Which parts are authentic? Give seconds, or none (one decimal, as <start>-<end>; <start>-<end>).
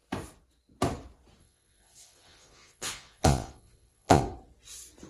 0.0-1.4; 4.2-5.1